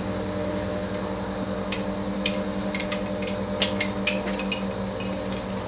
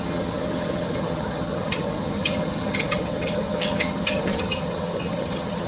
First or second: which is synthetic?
second